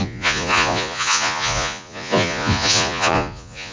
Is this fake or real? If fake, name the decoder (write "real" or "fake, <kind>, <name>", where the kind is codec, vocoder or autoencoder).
fake, vocoder, Vocos